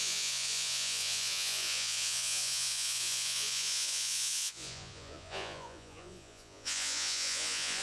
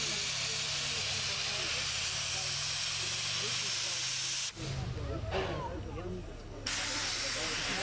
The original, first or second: second